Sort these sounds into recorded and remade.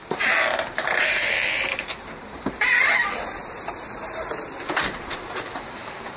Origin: remade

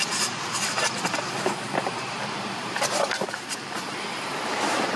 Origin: remade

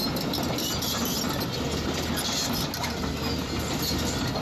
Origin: recorded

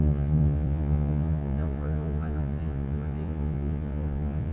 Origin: remade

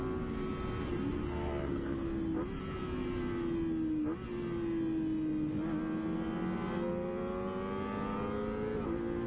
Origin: recorded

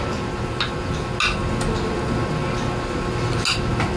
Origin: recorded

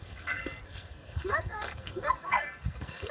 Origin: remade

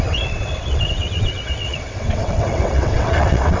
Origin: remade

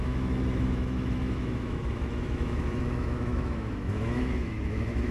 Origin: remade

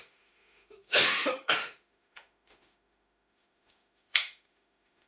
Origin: remade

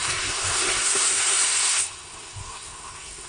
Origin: remade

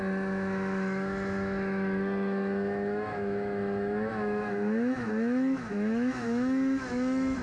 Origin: remade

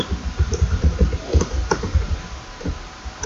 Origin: remade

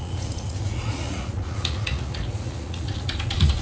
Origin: remade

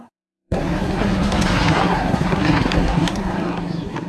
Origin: remade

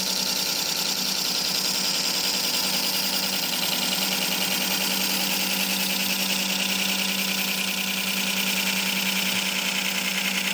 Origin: recorded